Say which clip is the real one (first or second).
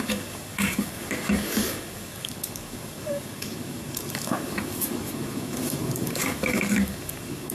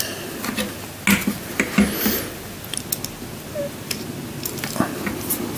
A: second